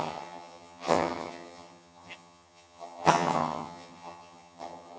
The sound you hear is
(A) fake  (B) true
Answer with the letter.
A